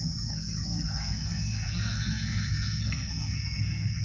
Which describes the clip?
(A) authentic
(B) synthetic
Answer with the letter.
B